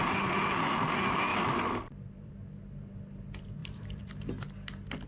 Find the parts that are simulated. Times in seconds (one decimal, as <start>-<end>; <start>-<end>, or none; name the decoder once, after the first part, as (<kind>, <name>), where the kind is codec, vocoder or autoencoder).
1.3-2.3 (vocoder, BigVGAN v2); 3.6-4.3